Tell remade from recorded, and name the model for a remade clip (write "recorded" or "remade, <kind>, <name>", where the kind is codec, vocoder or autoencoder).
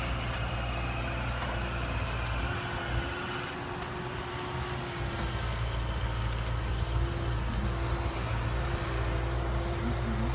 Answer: recorded